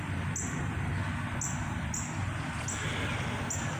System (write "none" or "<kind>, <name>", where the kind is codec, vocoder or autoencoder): none